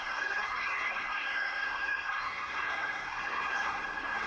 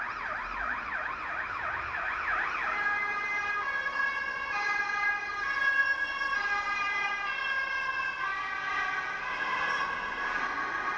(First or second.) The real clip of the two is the second